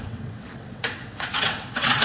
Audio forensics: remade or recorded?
remade